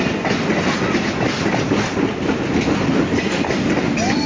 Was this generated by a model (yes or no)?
no